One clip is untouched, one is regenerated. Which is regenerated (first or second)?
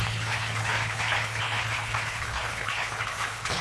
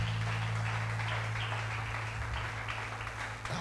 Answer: first